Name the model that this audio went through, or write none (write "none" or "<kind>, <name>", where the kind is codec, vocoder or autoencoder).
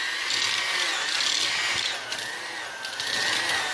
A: none